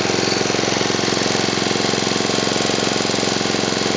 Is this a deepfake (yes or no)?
no